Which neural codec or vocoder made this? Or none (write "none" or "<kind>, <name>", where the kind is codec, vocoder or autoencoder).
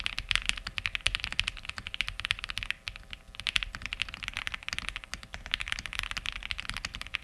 none